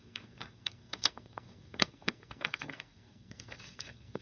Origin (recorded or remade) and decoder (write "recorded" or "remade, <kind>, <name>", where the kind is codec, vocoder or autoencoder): remade, codec, SNAC